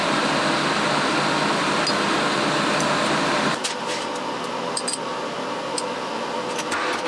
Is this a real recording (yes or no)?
yes